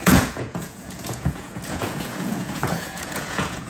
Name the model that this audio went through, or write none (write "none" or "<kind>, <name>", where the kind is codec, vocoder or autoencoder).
vocoder, Vocos